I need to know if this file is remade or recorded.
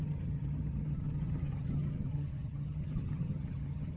remade